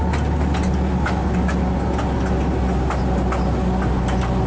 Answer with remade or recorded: recorded